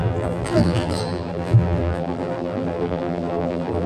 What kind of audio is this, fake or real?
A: fake